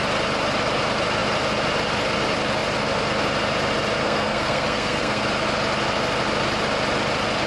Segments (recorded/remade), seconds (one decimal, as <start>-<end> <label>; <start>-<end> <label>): 0.0-4.0 recorded; 4.0-5.3 remade; 5.3-7.5 recorded